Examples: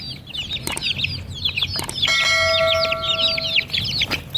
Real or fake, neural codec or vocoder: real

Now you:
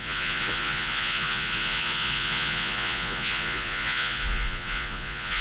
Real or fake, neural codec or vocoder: fake, vocoder, Vocos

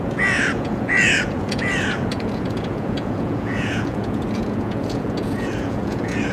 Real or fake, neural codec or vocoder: fake, vocoder, Vocos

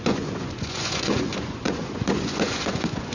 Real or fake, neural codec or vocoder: fake, vocoder, Vocos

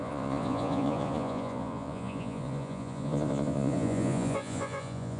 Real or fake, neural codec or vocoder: fake, vocoder, Vocos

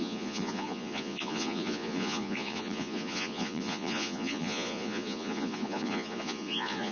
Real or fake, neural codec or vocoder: fake, vocoder, Vocos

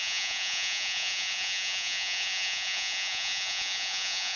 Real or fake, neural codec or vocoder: fake, vocoder, Vocos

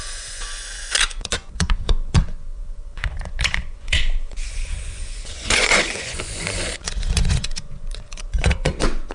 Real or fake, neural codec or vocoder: fake, vocoder, Vocos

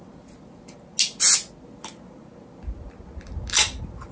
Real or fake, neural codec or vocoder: real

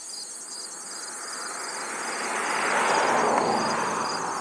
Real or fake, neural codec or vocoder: real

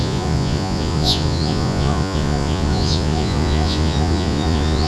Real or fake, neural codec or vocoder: fake, vocoder, Vocos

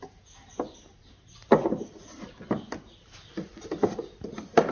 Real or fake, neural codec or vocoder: real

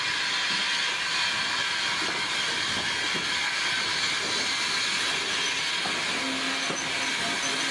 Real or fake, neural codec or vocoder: real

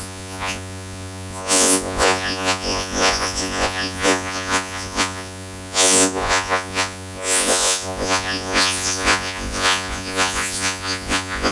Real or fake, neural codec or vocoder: fake, vocoder, Vocos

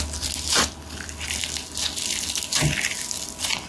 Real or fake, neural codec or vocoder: real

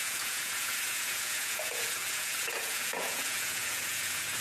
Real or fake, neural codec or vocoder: fake, vocoder, Vocos